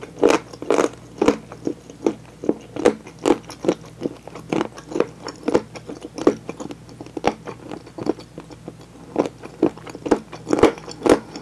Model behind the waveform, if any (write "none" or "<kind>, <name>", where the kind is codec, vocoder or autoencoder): none